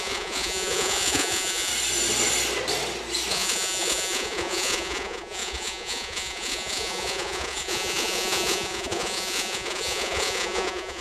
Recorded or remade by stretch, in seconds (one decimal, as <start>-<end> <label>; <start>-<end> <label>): 0.0-1.7 remade; 1.7-3.3 recorded; 3.3-11.0 remade